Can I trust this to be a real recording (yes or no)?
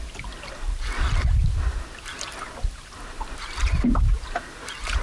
yes